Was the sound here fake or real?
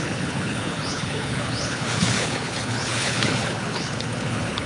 fake